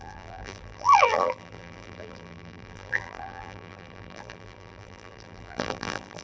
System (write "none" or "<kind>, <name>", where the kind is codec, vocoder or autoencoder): vocoder, BigVGAN v2